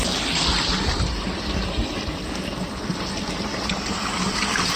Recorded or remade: recorded